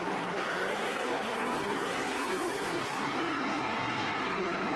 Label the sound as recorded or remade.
remade